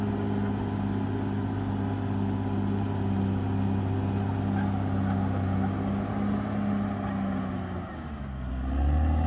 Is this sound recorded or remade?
recorded